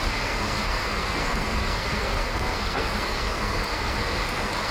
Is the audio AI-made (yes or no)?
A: yes